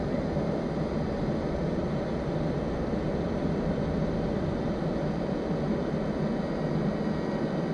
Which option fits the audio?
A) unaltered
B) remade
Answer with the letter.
A